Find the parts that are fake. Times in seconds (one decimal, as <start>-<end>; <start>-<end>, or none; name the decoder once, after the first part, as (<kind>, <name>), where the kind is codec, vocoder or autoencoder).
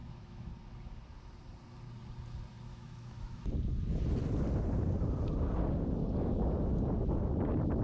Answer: 0.0-0.5 (autoencoder, DAC-VAE); 2.7-3.5